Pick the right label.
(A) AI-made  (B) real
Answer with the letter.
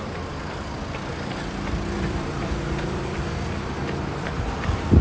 B